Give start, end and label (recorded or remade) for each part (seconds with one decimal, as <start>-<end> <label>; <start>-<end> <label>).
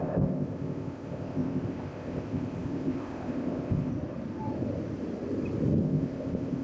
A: 0.0-3.9 remade; 3.9-5.8 recorded; 5.8-6.6 remade